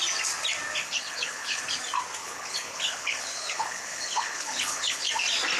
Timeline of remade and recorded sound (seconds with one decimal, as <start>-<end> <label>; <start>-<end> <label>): 0.0-0.8 recorded; 0.8-1.6 remade; 1.6-2.2 recorded; 2.2-5.1 remade; 5.1-5.6 recorded